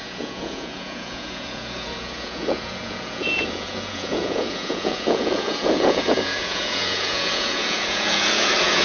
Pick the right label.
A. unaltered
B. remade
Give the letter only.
B